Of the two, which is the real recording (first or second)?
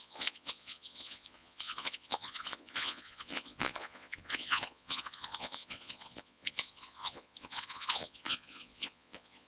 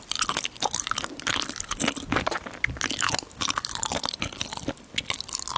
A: second